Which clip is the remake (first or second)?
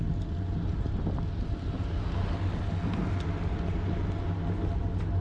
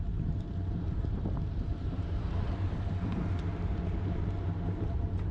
second